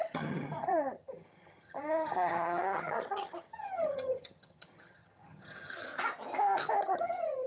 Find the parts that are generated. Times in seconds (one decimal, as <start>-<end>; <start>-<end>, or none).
0.0-5.9; 6.8-7.5